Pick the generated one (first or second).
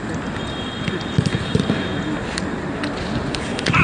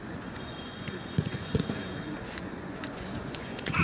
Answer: second